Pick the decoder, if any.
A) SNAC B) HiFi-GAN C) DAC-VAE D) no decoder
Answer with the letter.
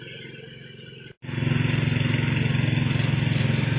D